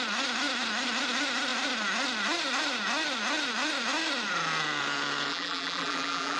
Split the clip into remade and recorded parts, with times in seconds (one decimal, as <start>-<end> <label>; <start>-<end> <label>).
0.0-5.3 recorded; 5.3-6.4 remade

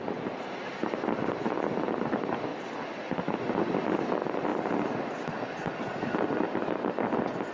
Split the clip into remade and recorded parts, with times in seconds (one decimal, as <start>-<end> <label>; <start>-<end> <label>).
0.0-2.5 recorded; 2.5-4.0 remade; 4.0-4.5 recorded; 4.5-5.7 remade; 5.7-7.5 recorded

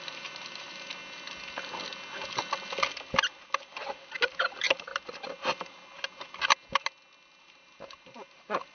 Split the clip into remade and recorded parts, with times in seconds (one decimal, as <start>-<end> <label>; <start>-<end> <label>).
0.0-1.0 remade; 1.0-3.2 recorded; 3.2-4.9 remade; 4.9-7.4 recorded; 7.4-8.7 remade

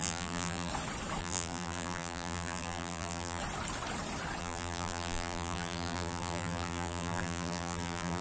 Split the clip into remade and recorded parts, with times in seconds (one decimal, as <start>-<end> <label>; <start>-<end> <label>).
0.0-0.7 remade; 0.7-1.2 recorded; 1.2-3.4 remade; 3.4-4.4 recorded; 4.4-8.2 remade

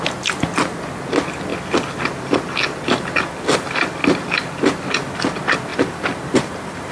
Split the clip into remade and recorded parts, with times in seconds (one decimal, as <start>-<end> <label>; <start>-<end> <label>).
0.0-5.7 recorded; 5.7-6.9 remade